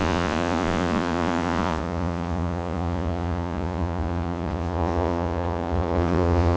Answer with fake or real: fake